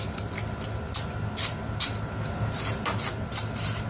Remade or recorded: recorded